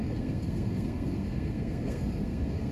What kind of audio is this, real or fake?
fake